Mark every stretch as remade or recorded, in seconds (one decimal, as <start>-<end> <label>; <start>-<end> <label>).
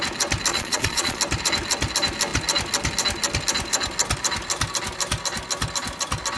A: 0.0-0.5 recorded; 0.5-1.2 remade; 1.2-6.4 recorded